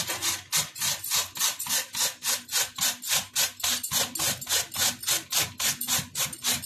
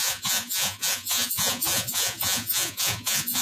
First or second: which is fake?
second